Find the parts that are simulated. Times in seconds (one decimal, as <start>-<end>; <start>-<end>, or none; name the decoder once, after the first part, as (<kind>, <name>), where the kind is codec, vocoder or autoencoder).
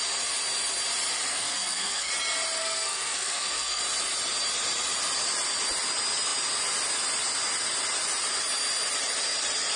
1.3-2.1 (codec, SNAC); 2.6-3.8